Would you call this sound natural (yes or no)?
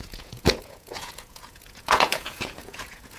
no